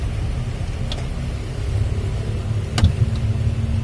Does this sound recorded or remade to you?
recorded